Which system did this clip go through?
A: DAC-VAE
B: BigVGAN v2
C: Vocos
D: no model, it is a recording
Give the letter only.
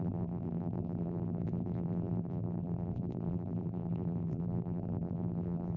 B